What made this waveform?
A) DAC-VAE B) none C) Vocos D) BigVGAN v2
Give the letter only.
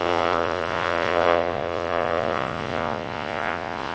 C